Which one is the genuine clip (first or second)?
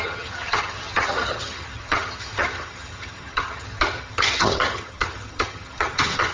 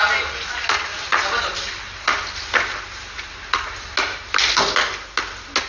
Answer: second